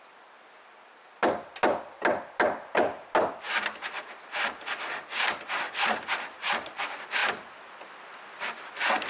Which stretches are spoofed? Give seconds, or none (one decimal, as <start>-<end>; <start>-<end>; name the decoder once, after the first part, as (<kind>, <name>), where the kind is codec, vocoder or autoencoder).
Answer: none